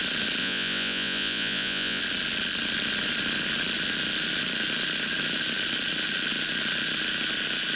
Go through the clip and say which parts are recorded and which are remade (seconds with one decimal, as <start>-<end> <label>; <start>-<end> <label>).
0.0-0.4 recorded; 0.4-2.0 remade; 2.0-7.8 recorded